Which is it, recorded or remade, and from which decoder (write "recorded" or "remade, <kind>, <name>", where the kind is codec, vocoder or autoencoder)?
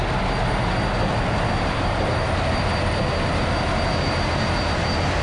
recorded